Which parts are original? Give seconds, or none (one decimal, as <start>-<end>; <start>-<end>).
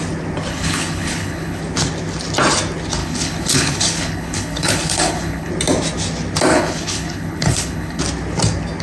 0.0-0.5; 1.6-3.0; 5.5-6.5; 8.0-8.8